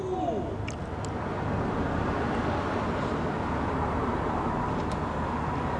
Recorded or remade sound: recorded